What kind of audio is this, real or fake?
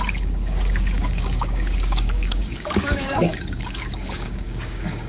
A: fake